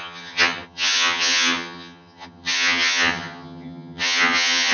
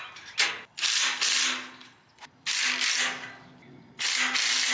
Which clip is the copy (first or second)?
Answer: first